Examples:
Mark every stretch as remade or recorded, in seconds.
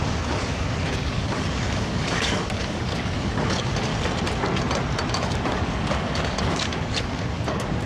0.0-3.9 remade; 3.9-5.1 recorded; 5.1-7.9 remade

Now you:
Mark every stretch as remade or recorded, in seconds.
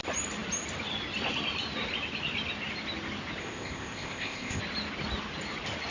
0.0-3.4 recorded; 3.4-4.6 remade; 4.6-5.9 recorded